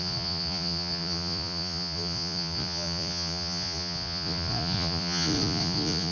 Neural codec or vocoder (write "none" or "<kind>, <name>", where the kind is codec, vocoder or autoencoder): vocoder, Vocos